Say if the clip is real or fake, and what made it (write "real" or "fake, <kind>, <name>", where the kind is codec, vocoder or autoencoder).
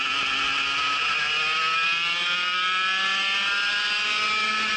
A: real